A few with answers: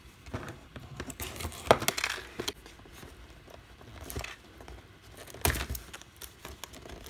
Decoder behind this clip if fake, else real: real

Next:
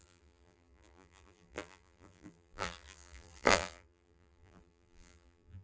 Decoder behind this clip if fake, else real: fake, vocoder, BigVGAN v2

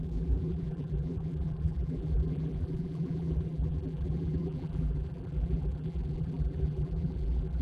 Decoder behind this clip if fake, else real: fake, vocoder, BigVGAN v2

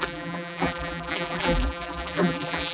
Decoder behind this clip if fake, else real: fake, vocoder, BigVGAN v2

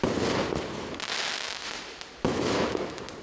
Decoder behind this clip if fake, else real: real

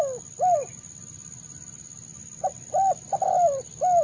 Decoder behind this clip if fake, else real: real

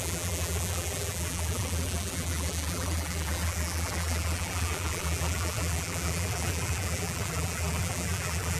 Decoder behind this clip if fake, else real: fake, vocoder, BigVGAN v2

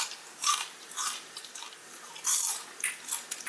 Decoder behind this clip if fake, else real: fake, vocoder, BigVGAN v2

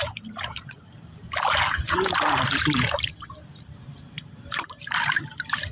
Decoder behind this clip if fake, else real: fake, vocoder, BigVGAN v2